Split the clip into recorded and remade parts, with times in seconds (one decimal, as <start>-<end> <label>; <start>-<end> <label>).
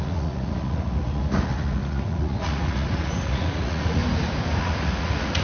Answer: 0.0-4.0 remade; 4.0-4.6 recorded; 4.6-5.4 remade